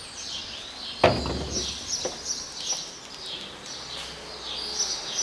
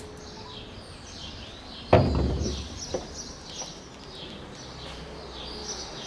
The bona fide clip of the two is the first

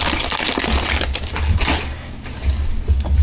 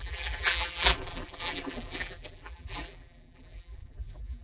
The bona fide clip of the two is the first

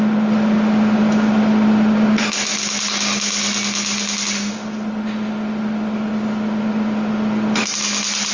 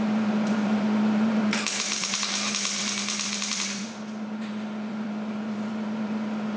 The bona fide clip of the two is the first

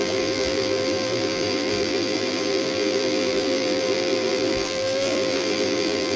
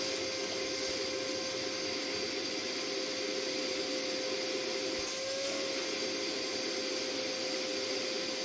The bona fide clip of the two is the second